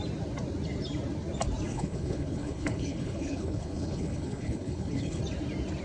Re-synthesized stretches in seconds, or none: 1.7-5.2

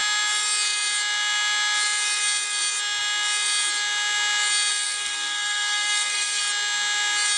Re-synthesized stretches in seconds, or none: 4.7-6.4

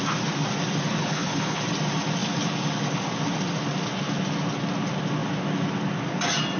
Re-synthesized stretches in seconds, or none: 1.0-1.6

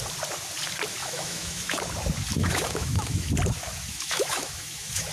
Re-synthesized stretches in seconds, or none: 1.0-1.8; 2.4-3.3; 3.9-5.1

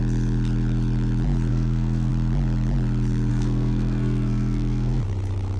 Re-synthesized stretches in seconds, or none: 1.5-2.1; 3.3-5.0

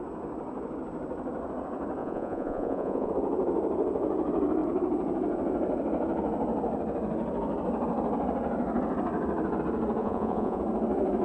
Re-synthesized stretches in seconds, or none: 2.0-3.1; 10.0-10.6